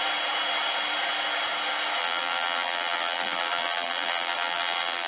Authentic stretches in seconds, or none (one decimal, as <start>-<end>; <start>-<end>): 0.0-2.0